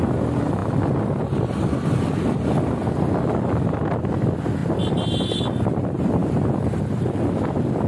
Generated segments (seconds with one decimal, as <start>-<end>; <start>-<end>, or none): none